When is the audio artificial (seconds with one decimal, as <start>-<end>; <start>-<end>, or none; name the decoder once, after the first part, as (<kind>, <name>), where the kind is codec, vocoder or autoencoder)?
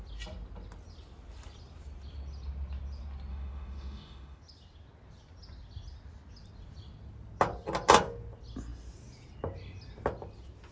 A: 3.3-4.4 (autoencoder, DAC-VAE)